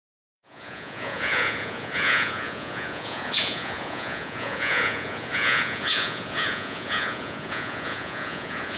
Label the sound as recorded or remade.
remade